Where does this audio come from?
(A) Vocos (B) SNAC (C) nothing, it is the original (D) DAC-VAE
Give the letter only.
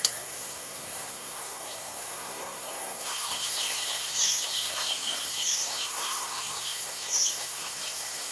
B